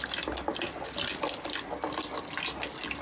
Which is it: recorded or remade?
recorded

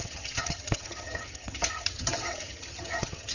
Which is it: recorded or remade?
remade